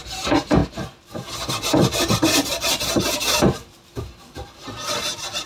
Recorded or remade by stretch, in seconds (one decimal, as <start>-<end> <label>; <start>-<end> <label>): 0.0-5.5 remade